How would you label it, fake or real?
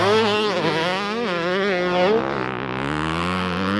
real